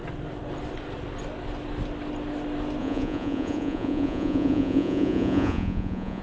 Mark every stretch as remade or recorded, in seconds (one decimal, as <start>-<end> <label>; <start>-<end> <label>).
0.0-2.8 recorded; 2.8-6.2 remade